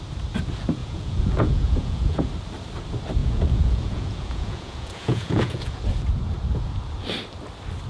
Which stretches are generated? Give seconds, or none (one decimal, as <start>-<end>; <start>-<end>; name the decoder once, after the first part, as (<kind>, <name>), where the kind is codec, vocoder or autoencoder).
0.8-2.3 (vocoder, Vocos); 3.2-5.8